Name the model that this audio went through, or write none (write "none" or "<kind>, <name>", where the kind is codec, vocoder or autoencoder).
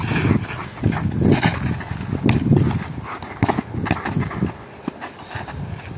none